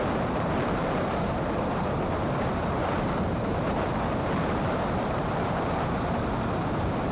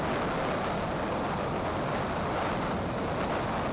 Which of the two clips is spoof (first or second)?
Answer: first